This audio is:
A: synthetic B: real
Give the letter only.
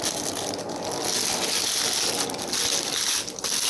B